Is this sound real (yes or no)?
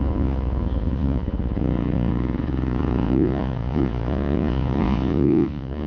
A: no